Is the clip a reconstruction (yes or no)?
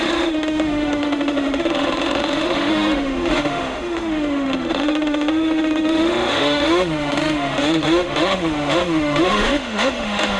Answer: yes